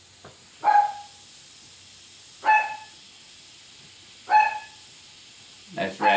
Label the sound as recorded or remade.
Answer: recorded